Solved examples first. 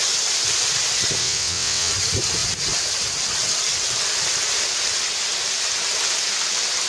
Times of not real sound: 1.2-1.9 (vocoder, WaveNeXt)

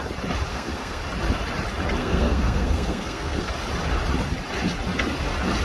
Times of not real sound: 0.5-1.0 (codec, SNAC); 2.0-3.5

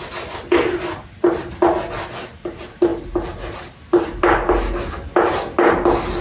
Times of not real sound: none